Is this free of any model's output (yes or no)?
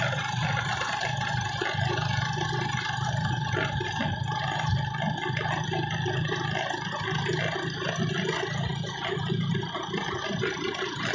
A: yes